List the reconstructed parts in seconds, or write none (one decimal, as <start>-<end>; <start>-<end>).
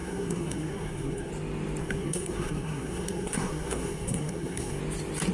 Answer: 0.0-1.3; 1.8-4.8